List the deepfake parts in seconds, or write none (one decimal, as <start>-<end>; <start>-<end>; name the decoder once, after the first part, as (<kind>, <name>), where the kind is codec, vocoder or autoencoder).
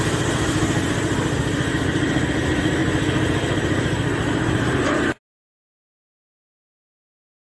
none